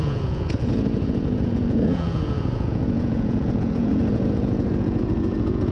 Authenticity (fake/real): fake